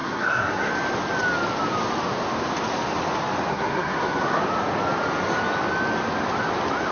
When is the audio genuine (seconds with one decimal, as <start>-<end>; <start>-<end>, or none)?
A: 0.7-3.5; 4.4-6.9